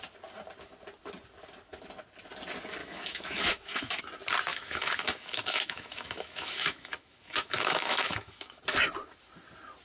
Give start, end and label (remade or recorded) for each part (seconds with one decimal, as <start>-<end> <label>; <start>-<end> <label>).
0.0-2.8 recorded; 2.8-4.0 remade; 4.0-4.5 recorded; 4.5-8.6 remade; 8.6-9.8 recorded